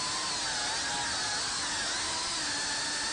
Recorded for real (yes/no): yes